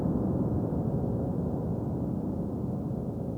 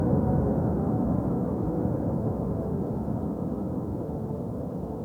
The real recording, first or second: first